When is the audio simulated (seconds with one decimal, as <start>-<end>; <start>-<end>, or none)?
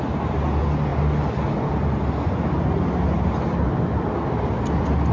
none